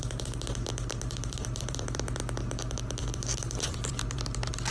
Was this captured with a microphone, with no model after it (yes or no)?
no